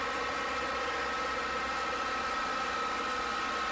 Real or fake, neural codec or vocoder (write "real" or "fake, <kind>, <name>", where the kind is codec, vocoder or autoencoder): real